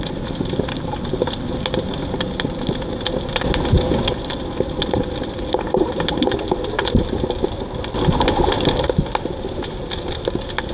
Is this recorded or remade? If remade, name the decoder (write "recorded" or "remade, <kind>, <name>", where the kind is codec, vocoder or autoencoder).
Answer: recorded